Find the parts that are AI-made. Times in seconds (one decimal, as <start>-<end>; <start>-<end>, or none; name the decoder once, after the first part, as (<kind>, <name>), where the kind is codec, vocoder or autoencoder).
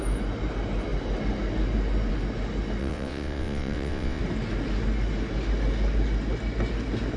2.8-4.2 (vocoder, WaveNeXt)